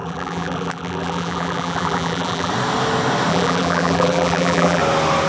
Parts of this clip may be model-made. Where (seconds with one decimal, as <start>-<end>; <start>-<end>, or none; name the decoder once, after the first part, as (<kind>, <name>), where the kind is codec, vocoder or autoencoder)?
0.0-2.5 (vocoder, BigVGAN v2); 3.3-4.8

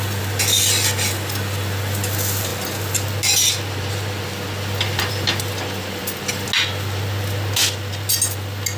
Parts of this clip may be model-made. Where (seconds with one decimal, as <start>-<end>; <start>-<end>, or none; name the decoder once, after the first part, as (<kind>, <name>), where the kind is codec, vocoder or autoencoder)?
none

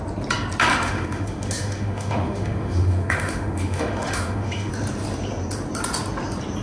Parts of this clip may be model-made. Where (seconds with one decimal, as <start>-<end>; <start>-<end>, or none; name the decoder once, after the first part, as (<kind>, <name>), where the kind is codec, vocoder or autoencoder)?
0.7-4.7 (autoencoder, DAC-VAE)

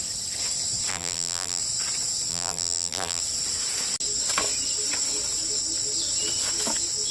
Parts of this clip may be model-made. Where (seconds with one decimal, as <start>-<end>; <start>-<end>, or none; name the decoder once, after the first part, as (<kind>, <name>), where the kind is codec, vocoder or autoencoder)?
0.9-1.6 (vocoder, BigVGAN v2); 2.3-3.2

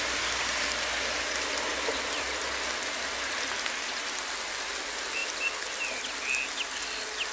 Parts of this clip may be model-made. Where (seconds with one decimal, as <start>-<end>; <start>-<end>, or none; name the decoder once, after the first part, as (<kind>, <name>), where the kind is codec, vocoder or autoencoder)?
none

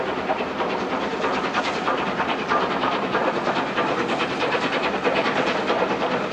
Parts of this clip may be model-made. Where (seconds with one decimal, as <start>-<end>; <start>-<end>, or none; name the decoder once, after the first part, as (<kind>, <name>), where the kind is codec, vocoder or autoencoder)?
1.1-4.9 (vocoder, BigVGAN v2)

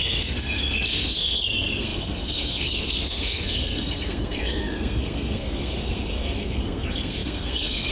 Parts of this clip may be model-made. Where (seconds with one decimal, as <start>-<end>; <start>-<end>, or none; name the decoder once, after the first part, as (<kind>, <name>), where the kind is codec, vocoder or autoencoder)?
0.0-7.9 (codec, SNAC)

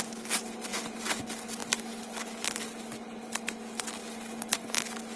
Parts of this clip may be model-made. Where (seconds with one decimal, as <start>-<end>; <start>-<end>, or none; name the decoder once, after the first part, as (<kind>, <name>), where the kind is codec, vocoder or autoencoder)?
none